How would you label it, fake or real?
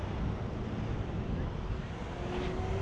real